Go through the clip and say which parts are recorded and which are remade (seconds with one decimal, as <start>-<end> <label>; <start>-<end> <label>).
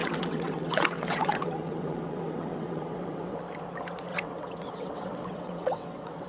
0.0-3.4 remade; 3.4-4.1 recorded; 4.1-6.3 remade